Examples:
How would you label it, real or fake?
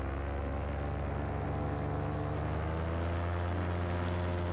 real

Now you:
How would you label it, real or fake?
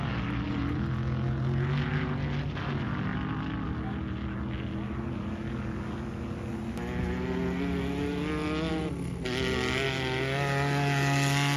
real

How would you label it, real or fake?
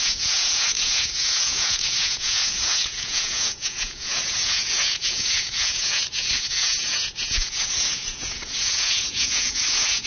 fake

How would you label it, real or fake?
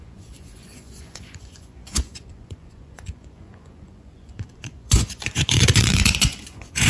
fake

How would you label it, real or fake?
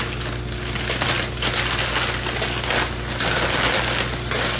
real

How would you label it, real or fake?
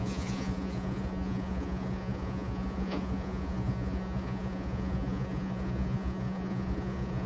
fake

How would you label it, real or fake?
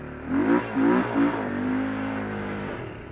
real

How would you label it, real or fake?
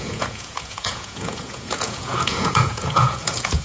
fake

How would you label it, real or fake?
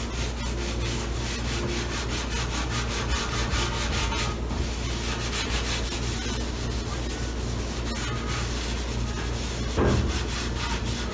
real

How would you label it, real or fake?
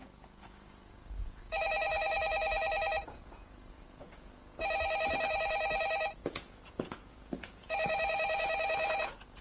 fake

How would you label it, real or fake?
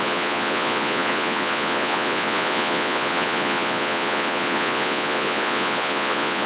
fake